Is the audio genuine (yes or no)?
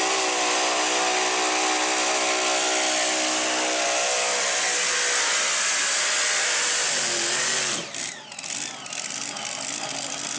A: yes